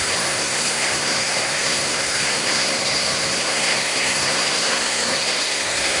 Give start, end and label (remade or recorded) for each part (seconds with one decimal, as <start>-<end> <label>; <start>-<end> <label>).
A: 0.0-6.0 remade